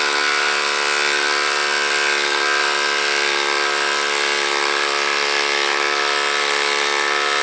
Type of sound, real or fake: real